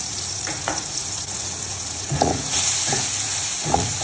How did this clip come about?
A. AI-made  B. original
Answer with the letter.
A